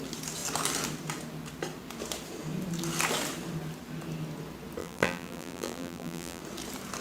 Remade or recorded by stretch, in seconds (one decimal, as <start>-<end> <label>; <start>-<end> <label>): 0.0-4.8 recorded; 4.8-6.4 remade; 6.4-7.0 recorded